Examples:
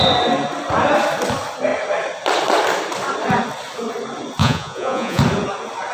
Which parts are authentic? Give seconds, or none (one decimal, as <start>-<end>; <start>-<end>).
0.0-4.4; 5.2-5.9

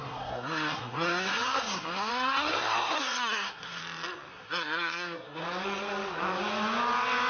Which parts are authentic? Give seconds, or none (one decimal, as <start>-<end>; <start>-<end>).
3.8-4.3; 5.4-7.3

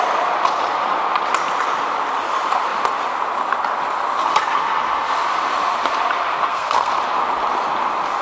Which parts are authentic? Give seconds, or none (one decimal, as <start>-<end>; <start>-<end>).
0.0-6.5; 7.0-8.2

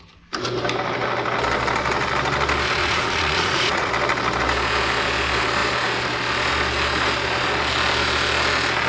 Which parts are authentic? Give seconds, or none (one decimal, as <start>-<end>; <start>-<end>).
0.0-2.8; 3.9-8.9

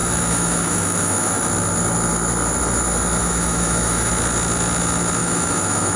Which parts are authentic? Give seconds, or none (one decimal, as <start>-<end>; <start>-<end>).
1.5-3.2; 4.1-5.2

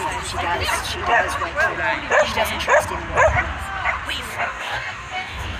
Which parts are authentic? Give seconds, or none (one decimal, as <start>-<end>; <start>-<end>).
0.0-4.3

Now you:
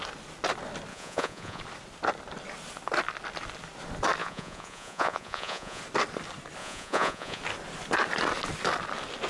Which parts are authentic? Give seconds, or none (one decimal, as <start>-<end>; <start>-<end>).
0.0-0.9; 1.6-4.2; 5.8-6.6; 7.4-9.3